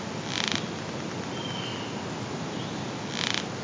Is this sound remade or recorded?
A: recorded